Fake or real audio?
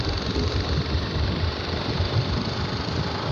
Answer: fake